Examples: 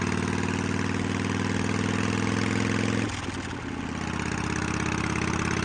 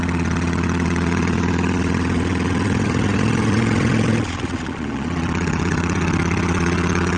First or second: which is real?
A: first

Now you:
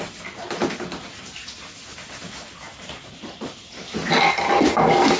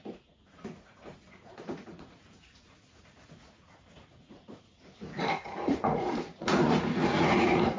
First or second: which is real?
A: first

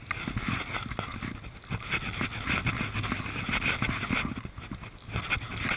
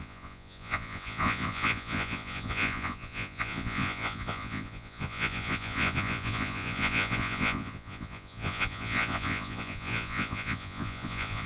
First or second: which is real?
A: first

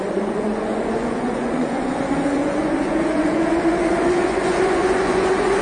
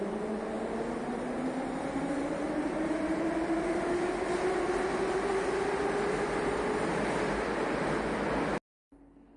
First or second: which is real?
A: second